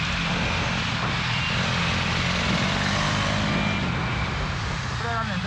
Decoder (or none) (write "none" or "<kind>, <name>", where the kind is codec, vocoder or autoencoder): none